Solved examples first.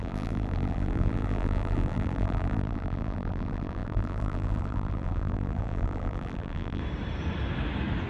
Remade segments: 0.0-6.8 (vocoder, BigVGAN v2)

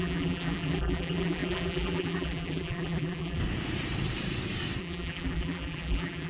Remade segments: 0.0-3.4 (vocoder, BigVGAN v2); 4.8-6.3

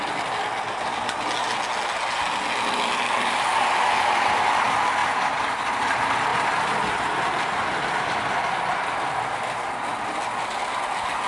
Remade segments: 5.0-5.7 (vocoder, BigVGAN v2); 6.3-7.6

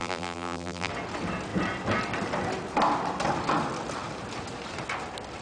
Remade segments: 0.0-0.9 (vocoder, BigVGAN v2)